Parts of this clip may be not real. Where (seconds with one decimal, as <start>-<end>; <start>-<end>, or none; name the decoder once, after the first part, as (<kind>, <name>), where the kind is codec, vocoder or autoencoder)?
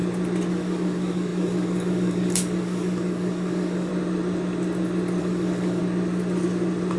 0.5-3.9 (codec, DAC); 5.2-5.8